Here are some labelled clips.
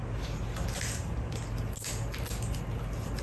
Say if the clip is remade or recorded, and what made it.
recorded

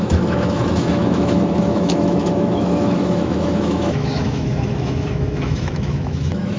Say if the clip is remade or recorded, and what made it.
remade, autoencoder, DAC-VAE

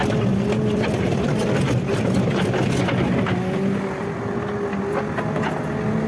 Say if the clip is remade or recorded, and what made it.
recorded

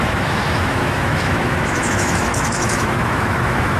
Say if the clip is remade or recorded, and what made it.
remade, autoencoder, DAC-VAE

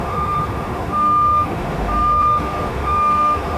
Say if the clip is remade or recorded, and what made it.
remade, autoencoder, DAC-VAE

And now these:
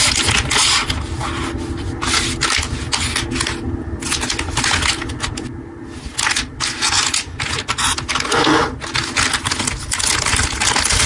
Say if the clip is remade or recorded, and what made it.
recorded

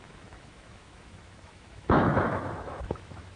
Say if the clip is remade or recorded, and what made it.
remade, autoencoder, DAC-VAE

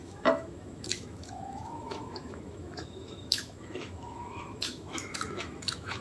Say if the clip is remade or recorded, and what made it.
remade, autoencoder, DAC-VAE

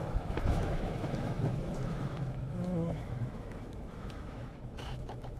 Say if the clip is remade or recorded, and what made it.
remade, autoencoder, DAC-VAE